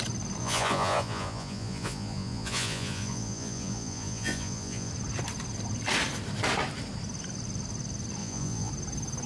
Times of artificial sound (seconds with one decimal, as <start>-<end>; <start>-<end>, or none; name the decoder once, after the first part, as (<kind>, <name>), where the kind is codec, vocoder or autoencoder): 0.4-4.9 (vocoder, Vocos); 8.2-8.7